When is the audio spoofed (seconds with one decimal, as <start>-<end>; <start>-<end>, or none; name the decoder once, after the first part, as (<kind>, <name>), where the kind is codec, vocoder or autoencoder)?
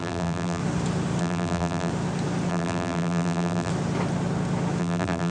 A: 0.0-0.6 (vocoder, BigVGAN v2); 1.2-1.9; 2.5-3.7; 4.8-5.3